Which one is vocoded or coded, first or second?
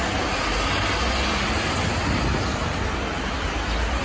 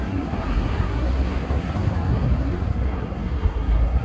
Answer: second